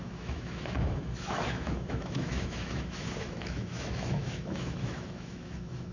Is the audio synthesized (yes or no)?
yes